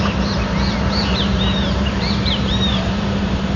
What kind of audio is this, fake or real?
fake